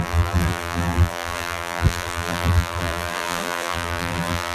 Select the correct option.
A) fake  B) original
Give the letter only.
A